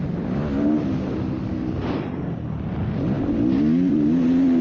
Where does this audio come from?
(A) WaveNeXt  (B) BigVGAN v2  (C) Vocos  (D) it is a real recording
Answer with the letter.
D